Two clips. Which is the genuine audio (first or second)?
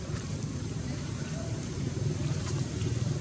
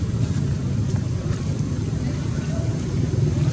second